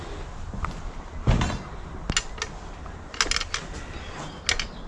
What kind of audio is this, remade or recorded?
recorded